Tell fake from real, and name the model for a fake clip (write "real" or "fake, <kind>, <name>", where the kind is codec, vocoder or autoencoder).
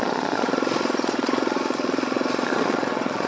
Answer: fake, vocoder, Vocos